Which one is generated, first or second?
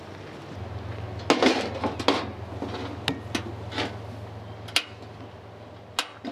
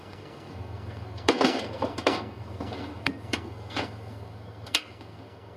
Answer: second